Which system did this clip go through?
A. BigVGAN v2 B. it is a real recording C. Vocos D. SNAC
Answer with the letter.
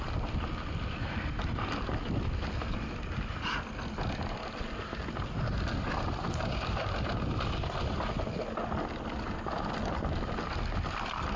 B